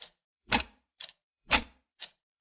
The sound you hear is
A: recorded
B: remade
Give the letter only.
B